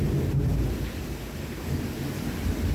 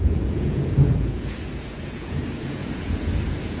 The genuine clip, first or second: first